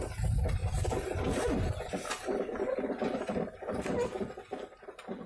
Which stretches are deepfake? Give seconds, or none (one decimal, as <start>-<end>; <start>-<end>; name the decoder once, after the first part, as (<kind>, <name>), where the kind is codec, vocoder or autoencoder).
none